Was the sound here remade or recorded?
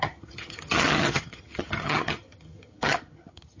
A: remade